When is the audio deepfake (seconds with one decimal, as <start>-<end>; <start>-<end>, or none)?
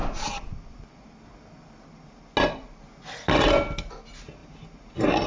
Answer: none